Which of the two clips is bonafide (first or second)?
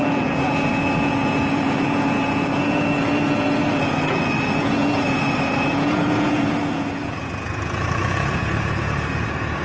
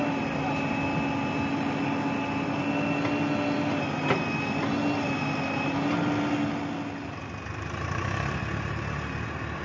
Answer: second